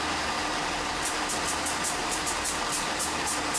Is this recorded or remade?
remade